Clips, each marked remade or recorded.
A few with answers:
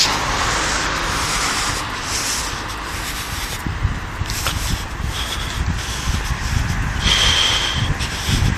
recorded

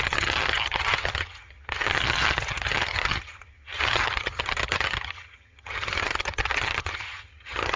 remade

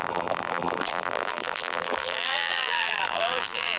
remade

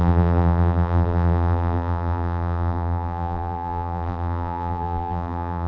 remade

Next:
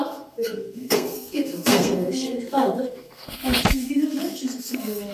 remade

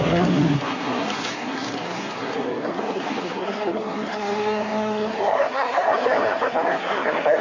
remade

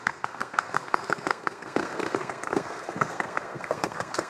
remade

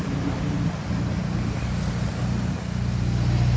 recorded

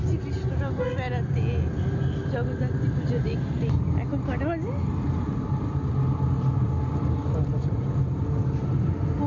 recorded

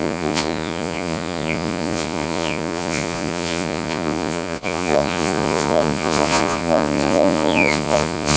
remade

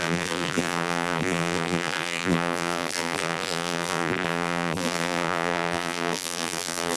remade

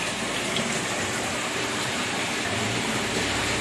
remade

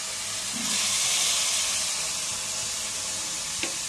recorded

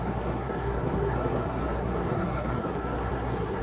remade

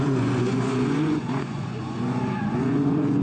remade